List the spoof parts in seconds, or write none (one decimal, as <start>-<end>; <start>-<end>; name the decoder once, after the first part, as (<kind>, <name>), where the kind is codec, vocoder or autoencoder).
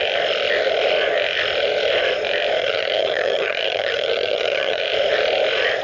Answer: 2.6-4.8 (vocoder, HiFi-GAN)